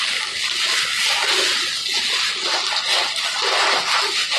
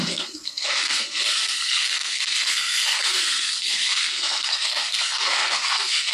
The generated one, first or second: second